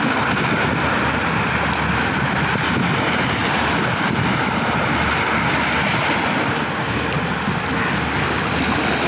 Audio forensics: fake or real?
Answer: real